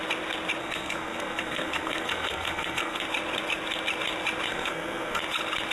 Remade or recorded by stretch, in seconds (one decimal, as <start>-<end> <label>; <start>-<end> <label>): 0.0-0.6 recorded; 0.6-3.0 remade; 3.0-4.5 recorded; 4.5-5.2 remade; 5.2-5.7 recorded